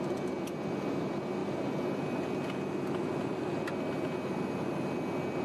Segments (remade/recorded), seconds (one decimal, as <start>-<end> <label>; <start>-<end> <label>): 0.0-5.4 recorded